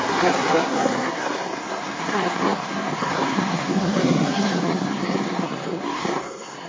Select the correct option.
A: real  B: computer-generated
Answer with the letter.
B